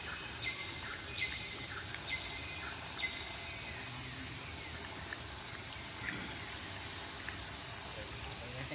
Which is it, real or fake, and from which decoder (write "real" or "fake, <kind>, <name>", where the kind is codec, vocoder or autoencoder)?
real